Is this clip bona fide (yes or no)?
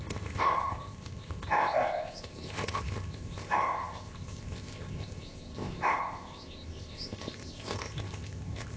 no